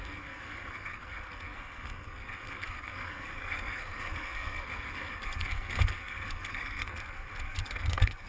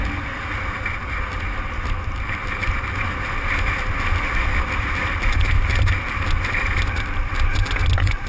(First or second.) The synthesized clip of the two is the first